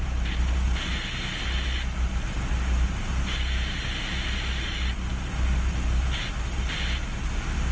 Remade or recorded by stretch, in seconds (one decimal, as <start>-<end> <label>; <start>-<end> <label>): 0.0-7.7 recorded